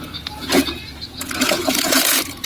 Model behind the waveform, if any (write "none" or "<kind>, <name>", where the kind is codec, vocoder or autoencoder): vocoder, Vocos